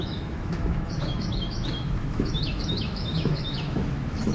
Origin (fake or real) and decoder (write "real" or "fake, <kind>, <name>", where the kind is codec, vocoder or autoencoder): fake, autoencoder, DAC-VAE